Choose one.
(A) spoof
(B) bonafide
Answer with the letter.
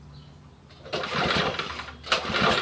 B